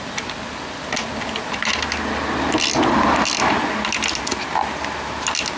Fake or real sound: real